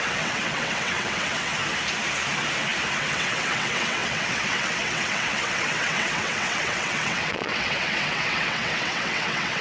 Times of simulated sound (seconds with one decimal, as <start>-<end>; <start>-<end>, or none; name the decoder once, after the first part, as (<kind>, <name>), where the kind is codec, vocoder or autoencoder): 0.0-1.5 (vocoder, WaveNeXt); 3.0-9.6

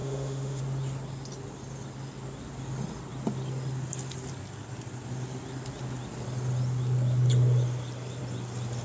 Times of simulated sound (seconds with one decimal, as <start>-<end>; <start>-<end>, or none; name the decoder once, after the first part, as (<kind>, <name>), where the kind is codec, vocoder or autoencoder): 0.0-0.6 (autoencoder, DAC-VAE)

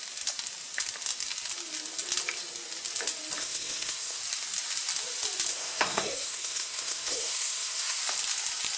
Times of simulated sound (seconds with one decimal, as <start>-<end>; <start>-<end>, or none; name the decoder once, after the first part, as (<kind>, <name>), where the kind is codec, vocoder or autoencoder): 3.4-4.2 (codec, SNAC); 5.5-8.0

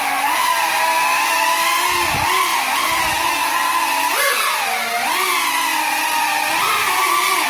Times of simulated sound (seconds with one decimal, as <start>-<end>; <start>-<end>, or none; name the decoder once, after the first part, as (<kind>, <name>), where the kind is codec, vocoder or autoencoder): none

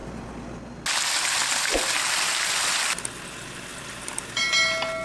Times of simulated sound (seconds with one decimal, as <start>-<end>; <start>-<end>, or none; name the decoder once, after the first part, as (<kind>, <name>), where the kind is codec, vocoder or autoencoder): none

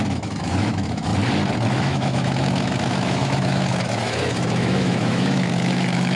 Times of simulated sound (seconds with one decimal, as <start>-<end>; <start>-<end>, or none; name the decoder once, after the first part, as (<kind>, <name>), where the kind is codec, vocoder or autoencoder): 0.0-1.1 (autoencoder, DAC-VAE); 1.7-6.2